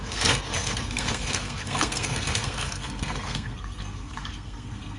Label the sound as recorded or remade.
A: remade